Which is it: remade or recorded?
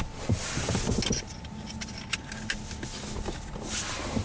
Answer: recorded